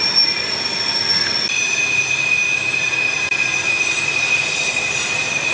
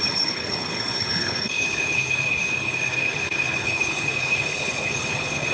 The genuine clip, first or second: first